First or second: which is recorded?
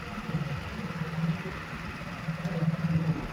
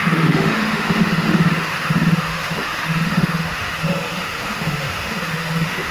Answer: first